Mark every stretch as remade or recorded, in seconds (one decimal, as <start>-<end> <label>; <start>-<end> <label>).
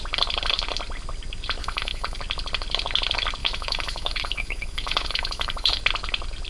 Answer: 0.0-1.6 recorded; 1.6-2.2 remade; 2.2-3.4 recorded; 3.4-5.8 remade; 5.8-6.5 recorded